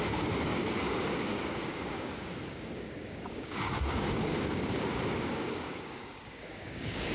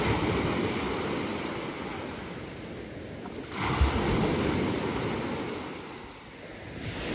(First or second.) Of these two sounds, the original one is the second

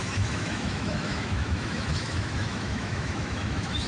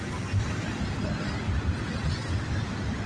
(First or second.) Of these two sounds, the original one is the second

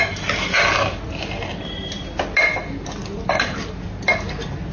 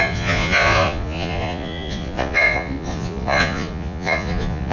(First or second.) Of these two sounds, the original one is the first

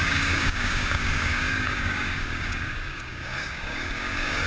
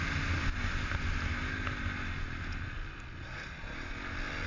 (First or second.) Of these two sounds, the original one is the second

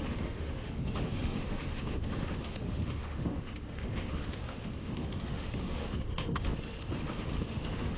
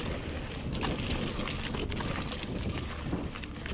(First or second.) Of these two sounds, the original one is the second